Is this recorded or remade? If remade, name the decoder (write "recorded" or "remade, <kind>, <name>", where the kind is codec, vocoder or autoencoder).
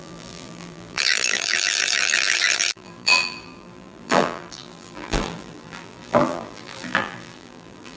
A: remade, vocoder, BigVGAN v2